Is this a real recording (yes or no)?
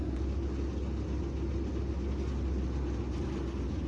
yes